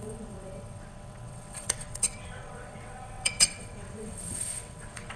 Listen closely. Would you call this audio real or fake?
fake